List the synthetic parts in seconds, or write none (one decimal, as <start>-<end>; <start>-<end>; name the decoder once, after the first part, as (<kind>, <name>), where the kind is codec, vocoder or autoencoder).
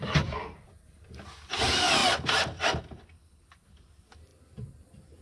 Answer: 4.3-5.2 (vocoder, BigVGAN v2)